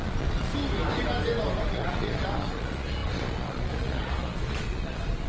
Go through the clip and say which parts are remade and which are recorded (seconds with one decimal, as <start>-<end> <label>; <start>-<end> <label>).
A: 0.0-0.5 remade; 0.5-1.7 recorded; 1.7-5.3 remade

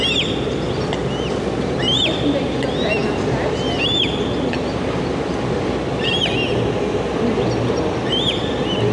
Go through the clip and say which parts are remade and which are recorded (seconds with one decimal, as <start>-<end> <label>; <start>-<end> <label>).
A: 0.0-8.9 recorded

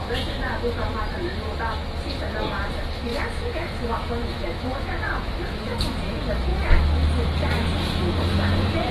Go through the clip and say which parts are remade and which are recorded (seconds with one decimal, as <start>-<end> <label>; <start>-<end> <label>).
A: 0.0-3.1 recorded; 3.1-6.0 remade; 6.0-8.9 recorded

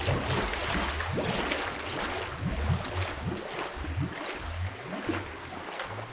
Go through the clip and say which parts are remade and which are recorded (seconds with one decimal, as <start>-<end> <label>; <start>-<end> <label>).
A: 0.0-5.4 recorded; 5.4-6.1 remade

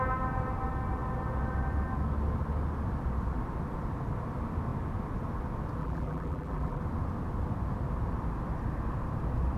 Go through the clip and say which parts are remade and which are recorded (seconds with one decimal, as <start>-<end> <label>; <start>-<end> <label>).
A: 0.0-5.8 recorded; 5.8-6.8 remade; 6.8-9.6 recorded

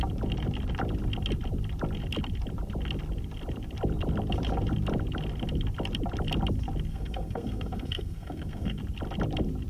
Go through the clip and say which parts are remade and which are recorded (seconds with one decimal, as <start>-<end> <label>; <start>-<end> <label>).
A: 0.0-6.9 recorded; 6.9-8.8 remade; 8.8-9.7 recorded

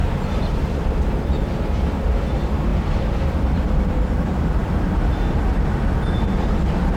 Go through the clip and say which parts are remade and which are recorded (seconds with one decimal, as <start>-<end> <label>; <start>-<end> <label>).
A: 0.0-1.9 remade; 1.9-2.7 recorded; 2.7-3.8 remade; 3.8-4.6 recorded; 4.6-7.0 remade